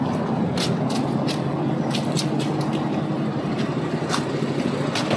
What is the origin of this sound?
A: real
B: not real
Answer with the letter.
A